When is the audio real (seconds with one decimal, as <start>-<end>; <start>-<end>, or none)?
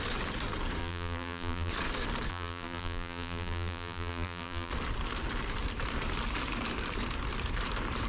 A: 0.0-0.8; 1.7-2.3; 4.7-8.1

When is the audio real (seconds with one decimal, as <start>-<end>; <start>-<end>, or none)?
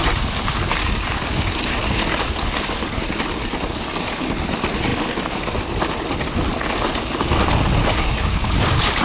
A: 0.0-0.8; 1.7-7.8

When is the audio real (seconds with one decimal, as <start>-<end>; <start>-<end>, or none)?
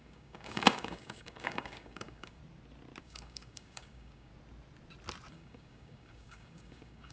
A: 2.4-3.0; 4.3-5.3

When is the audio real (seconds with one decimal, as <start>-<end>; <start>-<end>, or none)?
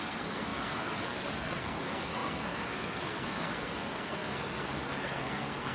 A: none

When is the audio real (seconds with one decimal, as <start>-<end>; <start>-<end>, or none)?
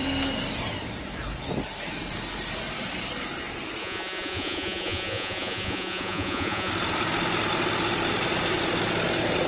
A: 0.0-3.8; 6.7-9.5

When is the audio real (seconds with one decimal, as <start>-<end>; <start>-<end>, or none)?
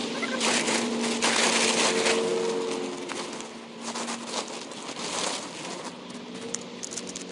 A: 0.9-7.3